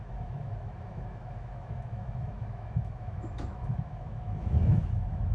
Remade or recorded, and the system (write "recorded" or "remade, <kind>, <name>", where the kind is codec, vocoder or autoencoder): remade, autoencoder, DAC-VAE